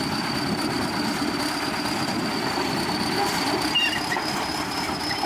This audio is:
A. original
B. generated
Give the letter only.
A